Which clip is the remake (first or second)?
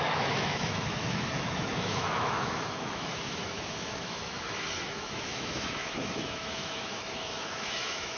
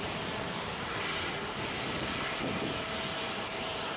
first